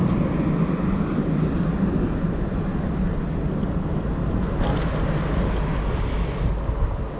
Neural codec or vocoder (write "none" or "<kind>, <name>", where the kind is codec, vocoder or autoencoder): none